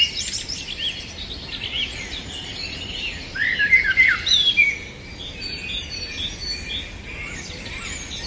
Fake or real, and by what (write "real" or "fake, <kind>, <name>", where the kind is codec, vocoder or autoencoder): real